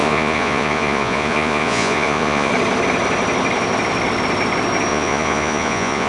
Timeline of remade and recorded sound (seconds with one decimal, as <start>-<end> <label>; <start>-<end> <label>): 0.0-2.5 remade; 2.5-4.9 recorded; 4.9-6.1 remade